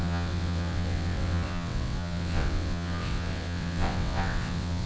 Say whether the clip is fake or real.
fake